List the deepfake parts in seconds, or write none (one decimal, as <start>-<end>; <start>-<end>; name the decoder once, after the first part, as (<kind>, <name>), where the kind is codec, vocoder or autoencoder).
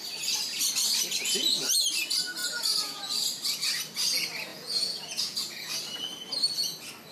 2.4-3.1 (vocoder, Vocos); 4.5-5.8